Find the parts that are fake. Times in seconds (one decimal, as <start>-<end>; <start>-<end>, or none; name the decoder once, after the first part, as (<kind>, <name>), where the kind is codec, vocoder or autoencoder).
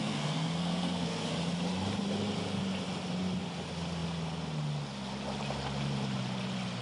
0.0-1.3 (codec, SNAC)